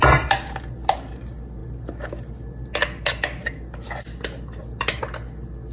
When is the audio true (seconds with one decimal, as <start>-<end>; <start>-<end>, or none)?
0.0-5.7